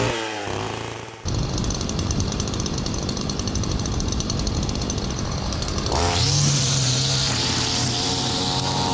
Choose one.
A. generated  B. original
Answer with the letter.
A